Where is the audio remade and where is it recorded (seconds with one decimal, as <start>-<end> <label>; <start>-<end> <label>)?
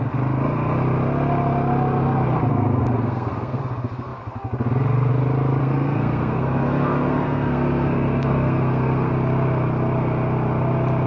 0.0-2.5 recorded; 2.5-3.6 remade; 3.6-5.6 recorded; 5.6-9.1 remade; 9.1-11.1 recorded